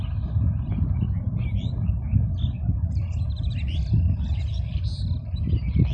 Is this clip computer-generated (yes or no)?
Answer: no